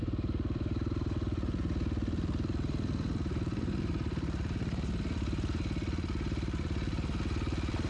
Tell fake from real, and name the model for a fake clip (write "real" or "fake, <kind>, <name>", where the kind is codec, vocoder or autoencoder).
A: fake, vocoder, BigVGAN v2